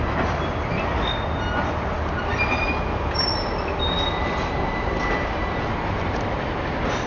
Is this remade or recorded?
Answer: recorded